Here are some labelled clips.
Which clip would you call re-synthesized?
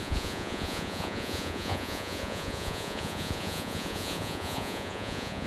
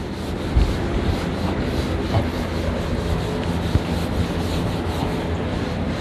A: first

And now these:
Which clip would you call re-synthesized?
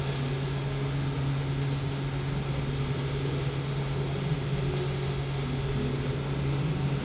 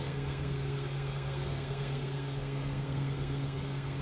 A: second